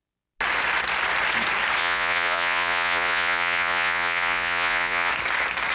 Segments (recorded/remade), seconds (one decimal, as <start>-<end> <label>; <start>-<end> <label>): 0.0-1.8 recorded; 1.8-5.1 remade; 5.1-5.7 recorded